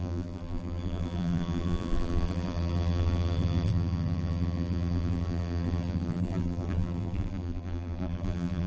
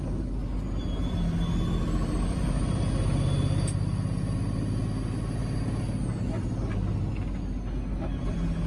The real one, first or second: second